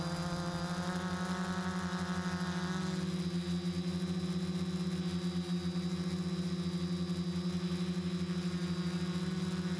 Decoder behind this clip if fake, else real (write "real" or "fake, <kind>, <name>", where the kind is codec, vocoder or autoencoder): real